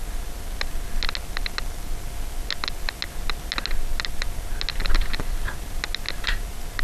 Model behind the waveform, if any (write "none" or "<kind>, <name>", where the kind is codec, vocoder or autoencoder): none